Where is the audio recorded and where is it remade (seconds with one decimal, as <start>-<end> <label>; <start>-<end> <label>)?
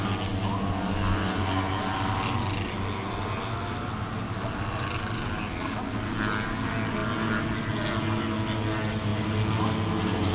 0.0-10.3 recorded